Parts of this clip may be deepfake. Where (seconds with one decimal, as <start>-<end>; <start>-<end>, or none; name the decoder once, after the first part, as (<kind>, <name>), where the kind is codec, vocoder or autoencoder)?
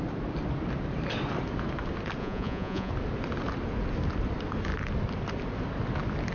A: 2.2-2.9 (vocoder, Vocos)